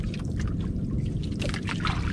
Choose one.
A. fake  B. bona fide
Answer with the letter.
B